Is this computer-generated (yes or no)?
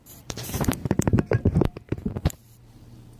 yes